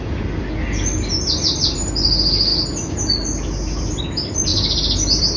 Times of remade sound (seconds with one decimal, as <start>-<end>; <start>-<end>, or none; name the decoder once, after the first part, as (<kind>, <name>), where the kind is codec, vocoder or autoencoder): none

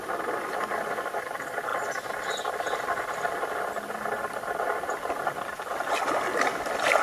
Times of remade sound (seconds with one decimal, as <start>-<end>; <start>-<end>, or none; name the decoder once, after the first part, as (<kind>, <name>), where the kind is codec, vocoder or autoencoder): none

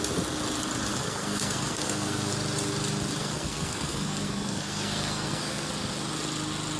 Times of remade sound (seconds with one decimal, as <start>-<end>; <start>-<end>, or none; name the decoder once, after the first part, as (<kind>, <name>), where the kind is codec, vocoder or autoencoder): 0.9-2.3 (codec, SNAC); 3.2-5.7

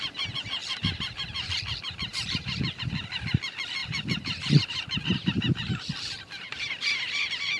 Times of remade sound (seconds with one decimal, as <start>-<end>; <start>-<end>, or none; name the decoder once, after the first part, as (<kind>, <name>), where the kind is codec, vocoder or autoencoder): 0.6-2.8 (vocoder, BigVGAN v2); 3.8-6.7